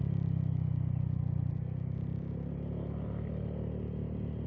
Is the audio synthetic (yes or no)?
no